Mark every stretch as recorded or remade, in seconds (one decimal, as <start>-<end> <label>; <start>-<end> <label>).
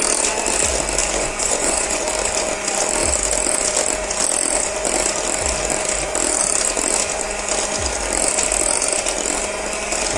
0.0-1.0 recorded; 1.0-2.1 remade; 2.1-10.2 recorded